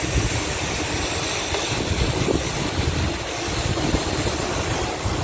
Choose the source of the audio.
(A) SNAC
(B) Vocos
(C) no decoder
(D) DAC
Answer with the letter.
C